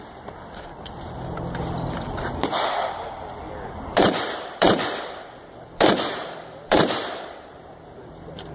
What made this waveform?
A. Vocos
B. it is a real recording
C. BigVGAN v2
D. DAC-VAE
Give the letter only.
C